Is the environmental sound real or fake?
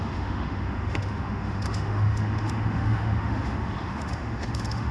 fake